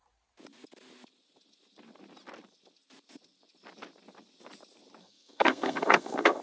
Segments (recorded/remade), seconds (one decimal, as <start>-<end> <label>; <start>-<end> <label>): 0.0-5.0 recorded; 5.0-6.4 remade